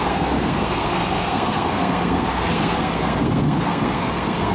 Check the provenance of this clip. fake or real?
fake